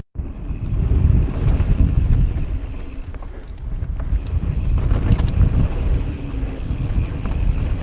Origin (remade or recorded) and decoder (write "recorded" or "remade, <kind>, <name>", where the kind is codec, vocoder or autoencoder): recorded